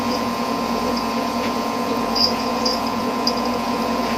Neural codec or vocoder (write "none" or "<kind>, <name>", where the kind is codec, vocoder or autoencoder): vocoder, Vocos